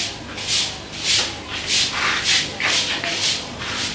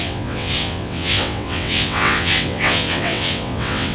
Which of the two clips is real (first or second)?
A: first